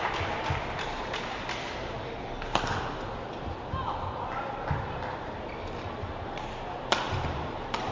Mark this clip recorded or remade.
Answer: recorded